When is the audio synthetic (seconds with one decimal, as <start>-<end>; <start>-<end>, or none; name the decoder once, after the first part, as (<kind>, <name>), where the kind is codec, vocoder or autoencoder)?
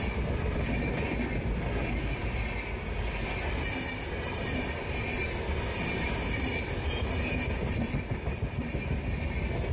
none